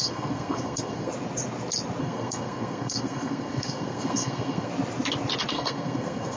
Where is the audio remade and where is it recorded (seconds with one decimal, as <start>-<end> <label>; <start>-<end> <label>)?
0.0-1.1 remade; 1.1-2.0 recorded; 2.0-4.7 remade; 4.7-5.5 recorded; 5.5-6.4 remade